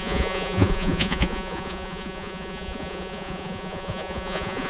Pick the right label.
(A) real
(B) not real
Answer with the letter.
B